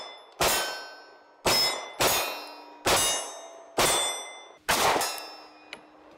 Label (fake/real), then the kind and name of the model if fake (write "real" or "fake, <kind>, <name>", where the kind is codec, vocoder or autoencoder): real